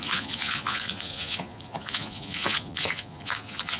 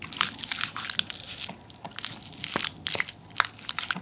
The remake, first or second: first